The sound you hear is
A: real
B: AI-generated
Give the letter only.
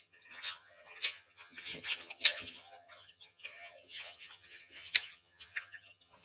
B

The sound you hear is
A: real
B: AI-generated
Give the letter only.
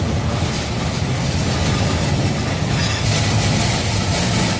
A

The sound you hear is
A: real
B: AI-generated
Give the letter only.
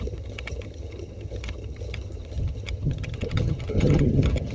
B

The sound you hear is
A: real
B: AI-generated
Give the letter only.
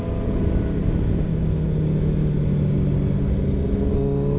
A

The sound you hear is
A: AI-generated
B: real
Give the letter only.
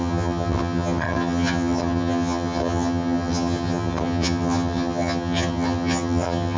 A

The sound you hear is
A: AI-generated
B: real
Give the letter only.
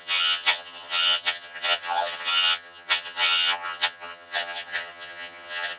A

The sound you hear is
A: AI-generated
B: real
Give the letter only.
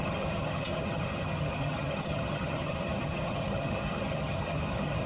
A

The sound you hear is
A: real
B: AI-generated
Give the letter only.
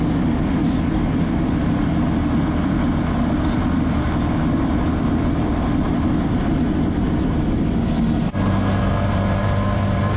A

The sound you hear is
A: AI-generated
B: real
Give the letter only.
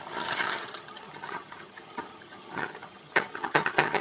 A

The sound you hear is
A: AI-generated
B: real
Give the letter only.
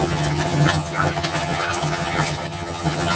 A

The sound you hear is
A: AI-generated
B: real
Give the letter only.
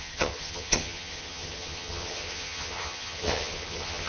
A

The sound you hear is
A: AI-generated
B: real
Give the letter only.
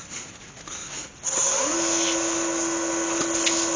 B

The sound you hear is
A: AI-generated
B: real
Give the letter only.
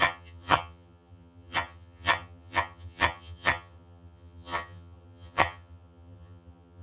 A